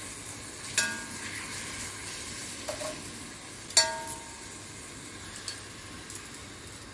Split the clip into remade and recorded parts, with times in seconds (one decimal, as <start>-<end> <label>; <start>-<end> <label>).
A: 0.0-6.9 recorded